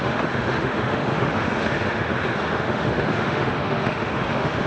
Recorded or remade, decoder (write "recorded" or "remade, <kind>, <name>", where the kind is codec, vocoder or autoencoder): remade, autoencoder, DAC-VAE